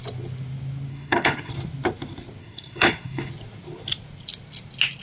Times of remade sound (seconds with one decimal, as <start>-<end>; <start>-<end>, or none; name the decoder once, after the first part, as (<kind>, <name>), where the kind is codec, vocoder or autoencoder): 0.9-1.5 (codec, HILCodec); 2.4-3.3